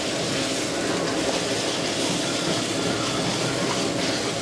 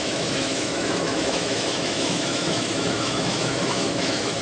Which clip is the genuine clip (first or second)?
first